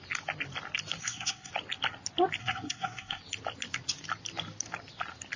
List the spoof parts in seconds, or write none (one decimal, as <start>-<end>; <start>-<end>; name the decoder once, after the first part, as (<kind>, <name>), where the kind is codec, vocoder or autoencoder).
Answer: 1.0-1.5 (codec, SNAC); 2.4-3.2